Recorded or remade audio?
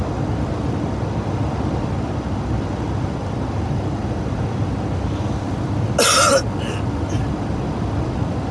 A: recorded